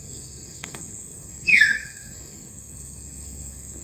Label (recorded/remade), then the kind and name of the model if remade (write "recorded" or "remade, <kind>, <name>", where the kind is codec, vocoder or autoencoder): remade, codec, SNAC